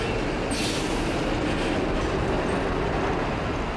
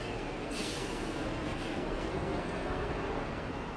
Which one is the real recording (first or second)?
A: first